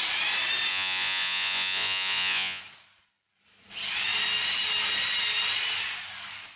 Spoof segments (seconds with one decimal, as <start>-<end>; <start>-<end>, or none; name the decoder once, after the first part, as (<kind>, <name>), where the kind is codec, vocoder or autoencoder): 0.7-2.6 (vocoder, Vocos)